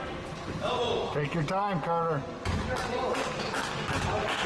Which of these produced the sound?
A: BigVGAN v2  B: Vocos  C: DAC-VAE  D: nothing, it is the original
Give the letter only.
D